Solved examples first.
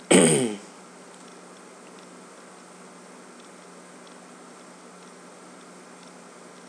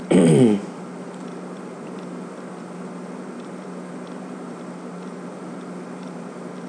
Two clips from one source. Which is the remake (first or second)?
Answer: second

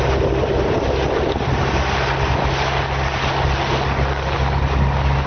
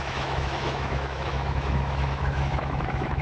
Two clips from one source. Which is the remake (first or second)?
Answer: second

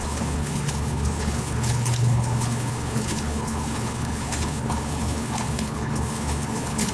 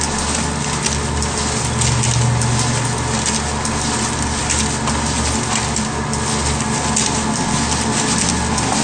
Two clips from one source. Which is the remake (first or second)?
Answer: first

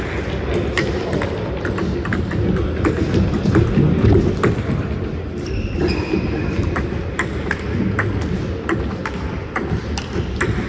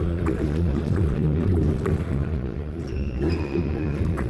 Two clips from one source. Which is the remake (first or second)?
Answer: second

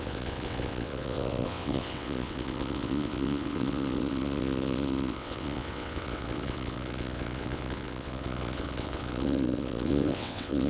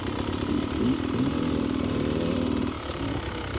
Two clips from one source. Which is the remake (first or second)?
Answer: first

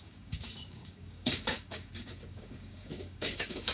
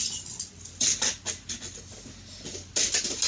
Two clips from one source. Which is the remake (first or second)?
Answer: first